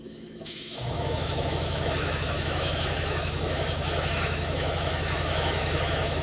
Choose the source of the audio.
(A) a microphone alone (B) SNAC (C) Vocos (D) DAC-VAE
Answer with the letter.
D